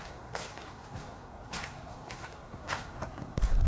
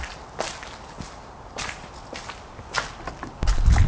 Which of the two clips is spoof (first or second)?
first